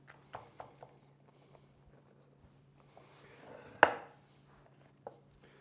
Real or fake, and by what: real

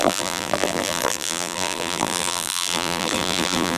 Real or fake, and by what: fake, vocoder, BigVGAN v2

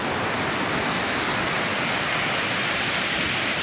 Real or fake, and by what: real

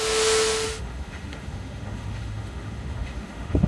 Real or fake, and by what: fake, autoencoder, DAC-VAE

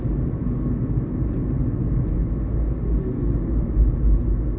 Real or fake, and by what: real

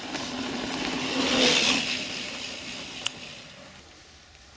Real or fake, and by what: real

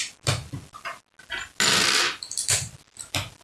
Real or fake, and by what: real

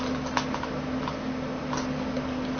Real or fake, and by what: real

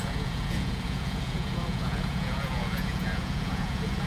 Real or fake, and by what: fake, vocoder, Vocos